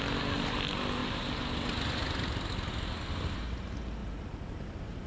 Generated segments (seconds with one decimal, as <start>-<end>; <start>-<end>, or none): none